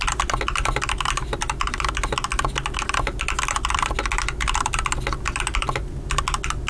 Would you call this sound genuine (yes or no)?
yes